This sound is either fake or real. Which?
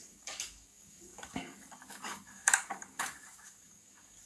fake